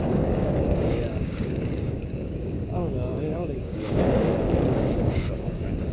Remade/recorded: remade